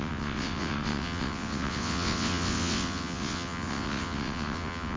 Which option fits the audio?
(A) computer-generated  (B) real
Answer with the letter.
A